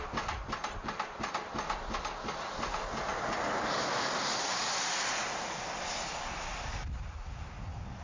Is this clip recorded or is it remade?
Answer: recorded